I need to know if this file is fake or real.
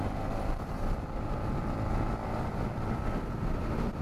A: real